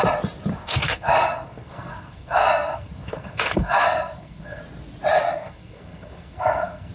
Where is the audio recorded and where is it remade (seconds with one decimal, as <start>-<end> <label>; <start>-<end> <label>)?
0.0-0.5 recorded; 0.5-4.6 remade; 4.6-5.1 recorded; 5.1-6.9 remade